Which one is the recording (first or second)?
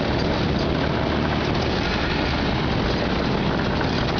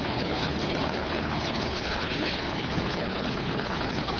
first